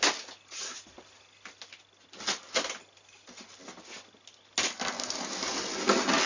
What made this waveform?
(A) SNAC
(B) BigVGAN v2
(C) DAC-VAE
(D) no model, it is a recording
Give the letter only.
D